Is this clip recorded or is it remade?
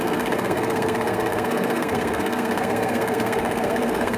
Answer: remade